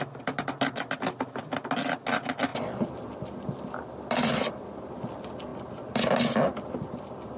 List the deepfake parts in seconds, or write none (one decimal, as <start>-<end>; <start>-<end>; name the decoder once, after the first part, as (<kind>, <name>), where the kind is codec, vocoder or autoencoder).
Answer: none